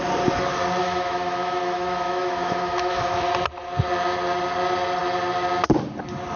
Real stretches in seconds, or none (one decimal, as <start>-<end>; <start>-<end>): 0.0-0.8; 3.3-6.4